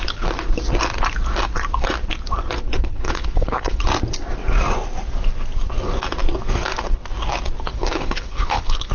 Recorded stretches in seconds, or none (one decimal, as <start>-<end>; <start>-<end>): 0.0-2.7; 3.8-7.7